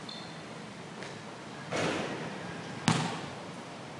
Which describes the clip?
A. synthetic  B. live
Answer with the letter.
B